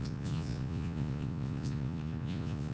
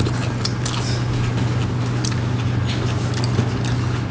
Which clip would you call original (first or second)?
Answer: second